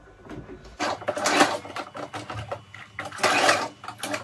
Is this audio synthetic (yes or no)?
no